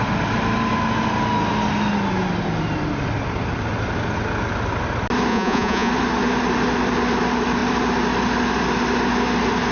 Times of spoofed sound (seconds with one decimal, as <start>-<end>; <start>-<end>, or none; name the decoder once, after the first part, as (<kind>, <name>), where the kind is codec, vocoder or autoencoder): 5.3-5.9 (vocoder, Vocos)